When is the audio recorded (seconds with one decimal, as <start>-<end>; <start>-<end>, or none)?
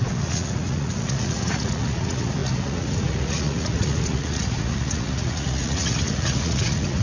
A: none